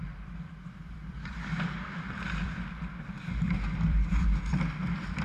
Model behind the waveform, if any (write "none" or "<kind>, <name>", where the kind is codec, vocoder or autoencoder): vocoder, BigVGAN v2